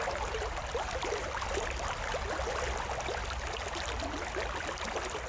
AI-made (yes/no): no